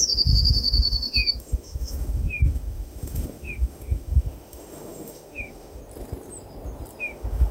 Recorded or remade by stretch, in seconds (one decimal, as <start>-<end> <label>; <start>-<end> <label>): 0.0-5.8 remade; 5.8-7.0 recorded; 7.0-7.5 remade